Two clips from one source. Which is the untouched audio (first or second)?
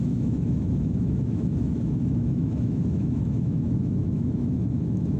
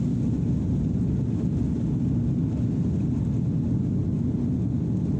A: second